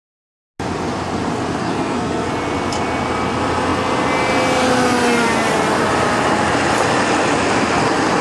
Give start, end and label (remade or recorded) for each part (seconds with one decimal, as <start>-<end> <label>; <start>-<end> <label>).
0.0-1.6 recorded; 1.6-2.3 remade; 2.3-8.2 recorded